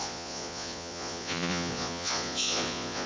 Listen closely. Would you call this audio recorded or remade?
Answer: remade